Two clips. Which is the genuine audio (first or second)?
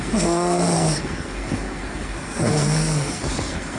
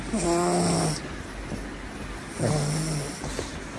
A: second